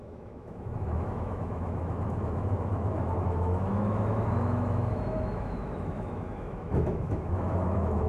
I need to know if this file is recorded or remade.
remade